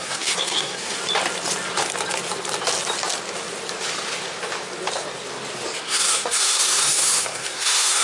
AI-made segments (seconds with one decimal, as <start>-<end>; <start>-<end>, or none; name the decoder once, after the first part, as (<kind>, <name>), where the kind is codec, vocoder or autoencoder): 0.0-1.0 (codec, SNAC); 5.8-8.0

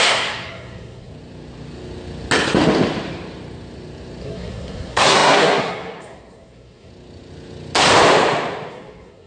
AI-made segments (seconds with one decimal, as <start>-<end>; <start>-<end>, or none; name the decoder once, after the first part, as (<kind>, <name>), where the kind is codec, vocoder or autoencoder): 0.0-1.1 (codec, SNAC); 4.2-6.9; 8.7-9.3

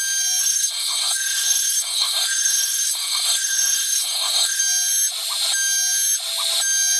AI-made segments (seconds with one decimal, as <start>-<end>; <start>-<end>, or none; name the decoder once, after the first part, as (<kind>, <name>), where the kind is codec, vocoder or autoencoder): 0.4-4.6 (codec, SNAC)

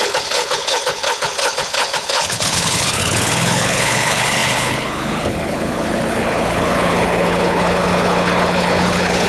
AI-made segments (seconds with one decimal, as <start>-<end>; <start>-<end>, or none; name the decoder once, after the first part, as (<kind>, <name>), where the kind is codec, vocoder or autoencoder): 0.0-9.3 (codec, HILCodec)

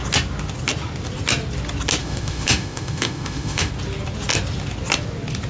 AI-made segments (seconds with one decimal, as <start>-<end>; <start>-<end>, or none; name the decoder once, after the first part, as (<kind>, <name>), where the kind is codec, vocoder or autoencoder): 2.0-3.7 (autoencoder, DAC-VAE)